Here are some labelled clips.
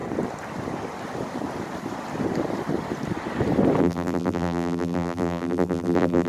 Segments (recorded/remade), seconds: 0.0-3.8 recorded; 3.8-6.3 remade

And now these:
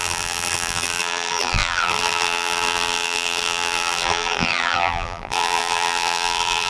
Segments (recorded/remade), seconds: 0.0-6.7 remade